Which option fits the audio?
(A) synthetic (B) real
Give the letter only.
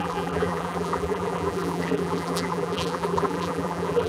A